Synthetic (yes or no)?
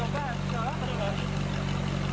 no